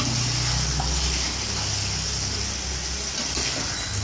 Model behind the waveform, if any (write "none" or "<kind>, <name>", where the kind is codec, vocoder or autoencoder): none